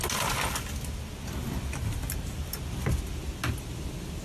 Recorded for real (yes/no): yes